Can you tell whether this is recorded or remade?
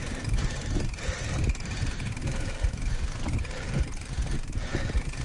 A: remade